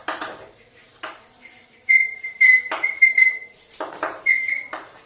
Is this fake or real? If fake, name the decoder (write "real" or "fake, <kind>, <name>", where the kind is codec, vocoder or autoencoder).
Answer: fake, vocoder, BigVGAN v2